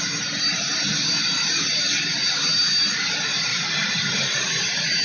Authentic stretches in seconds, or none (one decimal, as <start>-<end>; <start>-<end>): 0.0-3.5; 4.5-5.0